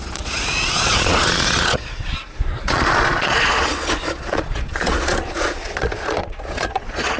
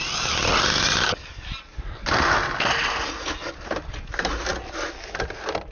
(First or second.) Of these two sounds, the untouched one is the second